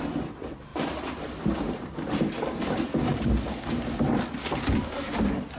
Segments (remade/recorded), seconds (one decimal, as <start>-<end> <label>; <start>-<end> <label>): 0.0-0.7 recorded; 0.7-1.4 remade; 1.4-5.6 recorded

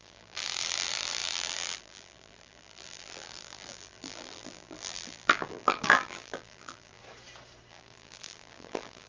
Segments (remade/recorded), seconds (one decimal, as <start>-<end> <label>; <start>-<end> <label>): 0.0-7.0 remade; 7.0-7.7 recorded; 7.7-9.1 remade

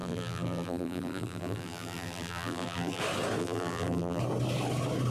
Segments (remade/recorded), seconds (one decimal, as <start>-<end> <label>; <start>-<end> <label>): 0.0-3.0 remade; 3.0-3.4 recorded; 3.4-4.2 remade; 4.2-5.1 recorded

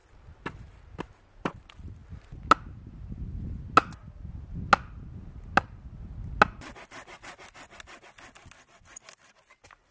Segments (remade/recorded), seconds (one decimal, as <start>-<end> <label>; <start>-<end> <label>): 0.0-9.9 recorded